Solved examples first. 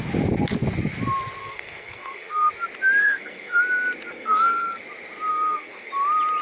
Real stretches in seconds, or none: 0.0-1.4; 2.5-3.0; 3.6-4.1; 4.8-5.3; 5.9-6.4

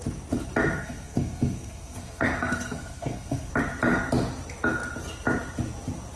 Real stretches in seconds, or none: 0.0-0.8; 3.5-6.2

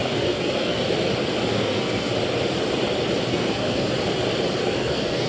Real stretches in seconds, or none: 0.8-1.5; 2.1-3.3; 3.9-4.6

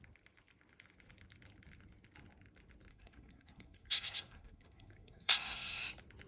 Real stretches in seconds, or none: 0.0-2.9; 5.8-6.3